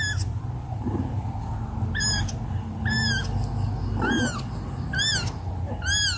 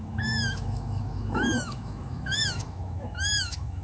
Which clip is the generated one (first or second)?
second